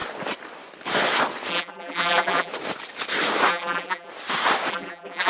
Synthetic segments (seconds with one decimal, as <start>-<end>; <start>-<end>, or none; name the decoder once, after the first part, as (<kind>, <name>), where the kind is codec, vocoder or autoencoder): 1.5-2.5 (vocoder, BigVGAN v2); 3.5-4.1; 4.7-5.3